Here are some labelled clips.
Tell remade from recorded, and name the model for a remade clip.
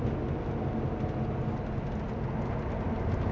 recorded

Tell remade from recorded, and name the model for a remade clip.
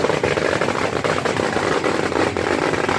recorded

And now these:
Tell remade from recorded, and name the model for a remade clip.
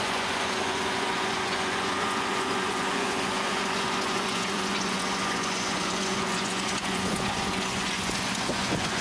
remade, vocoder, Vocos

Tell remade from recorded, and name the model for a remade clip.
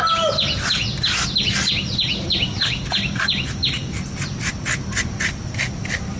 recorded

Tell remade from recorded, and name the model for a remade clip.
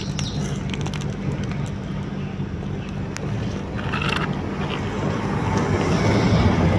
recorded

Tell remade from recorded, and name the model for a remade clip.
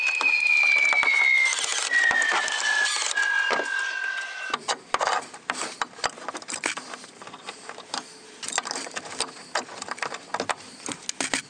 recorded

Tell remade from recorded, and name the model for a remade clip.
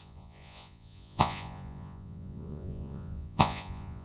remade, vocoder, Vocos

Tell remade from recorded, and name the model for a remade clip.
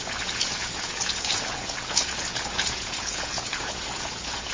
remade, vocoder, Vocos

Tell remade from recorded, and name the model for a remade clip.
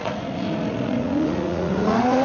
remade, vocoder, Vocos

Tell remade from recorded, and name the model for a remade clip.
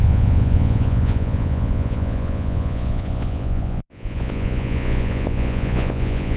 remade, vocoder, Vocos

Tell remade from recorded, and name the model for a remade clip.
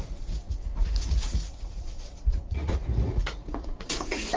remade, vocoder, Vocos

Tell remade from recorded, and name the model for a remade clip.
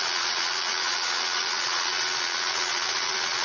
remade, vocoder, Vocos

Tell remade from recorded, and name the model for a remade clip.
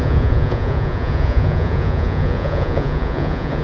remade, vocoder, Vocos